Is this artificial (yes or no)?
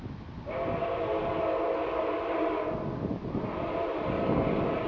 no